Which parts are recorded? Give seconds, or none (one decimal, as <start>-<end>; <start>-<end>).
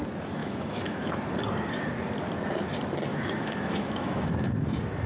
0.0-0.4; 1.1-3.1; 4.3-5.1